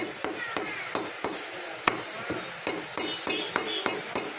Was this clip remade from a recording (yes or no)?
no